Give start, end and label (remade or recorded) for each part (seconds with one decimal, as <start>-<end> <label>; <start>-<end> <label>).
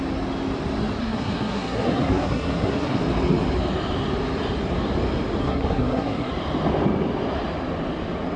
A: 0.0-1.0 recorded; 1.0-3.0 remade; 3.0-5.4 recorded; 5.4-6.3 remade; 6.3-8.4 recorded